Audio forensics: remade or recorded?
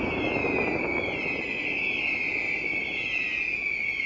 recorded